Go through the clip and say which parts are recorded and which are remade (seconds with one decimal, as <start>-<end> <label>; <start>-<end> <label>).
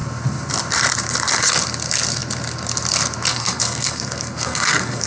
0.0-3.3 recorded; 3.3-5.1 remade